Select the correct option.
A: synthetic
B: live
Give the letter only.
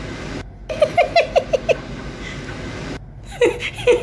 B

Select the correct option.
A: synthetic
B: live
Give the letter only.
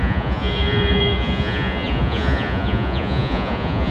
A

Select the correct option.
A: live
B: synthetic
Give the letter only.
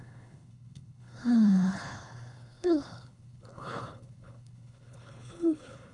B